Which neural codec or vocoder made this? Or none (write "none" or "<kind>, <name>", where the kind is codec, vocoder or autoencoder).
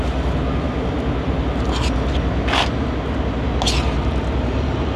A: none